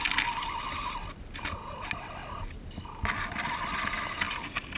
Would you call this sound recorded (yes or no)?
yes